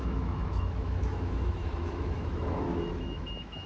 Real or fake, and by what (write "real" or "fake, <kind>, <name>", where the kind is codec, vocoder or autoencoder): fake, autoencoder, DAC-VAE